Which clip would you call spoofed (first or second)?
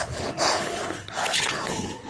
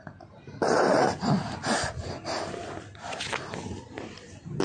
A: first